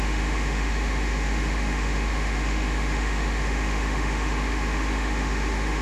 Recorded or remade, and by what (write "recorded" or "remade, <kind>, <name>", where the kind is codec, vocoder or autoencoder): remade, autoencoder, DAC-VAE